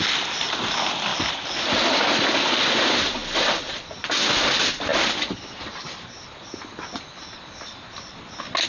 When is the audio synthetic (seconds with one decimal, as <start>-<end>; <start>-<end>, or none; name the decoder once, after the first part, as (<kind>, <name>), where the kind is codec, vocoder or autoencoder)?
1.1-2.3 (vocoder, BigVGAN v2); 3.2-4.2; 4.9-6.4